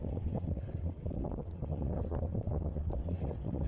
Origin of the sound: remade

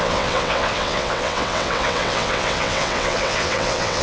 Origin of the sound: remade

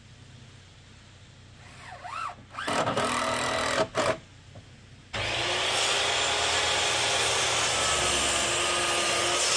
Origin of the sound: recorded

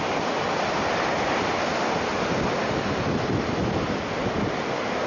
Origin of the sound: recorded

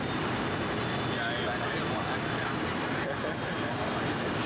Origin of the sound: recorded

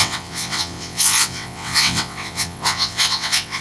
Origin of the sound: remade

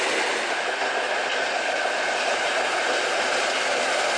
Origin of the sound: recorded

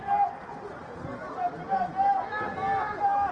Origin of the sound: recorded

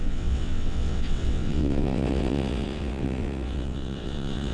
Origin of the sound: remade